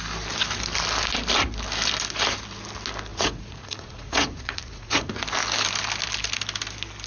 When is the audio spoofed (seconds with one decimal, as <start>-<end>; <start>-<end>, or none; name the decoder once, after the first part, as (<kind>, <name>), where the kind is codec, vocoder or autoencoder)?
3.1-5.1 (vocoder, Vocos)